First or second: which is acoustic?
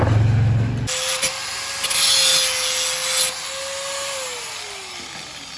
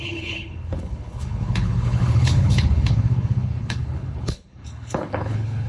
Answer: first